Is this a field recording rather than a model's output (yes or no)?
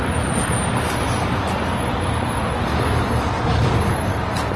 yes